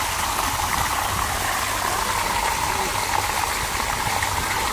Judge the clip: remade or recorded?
recorded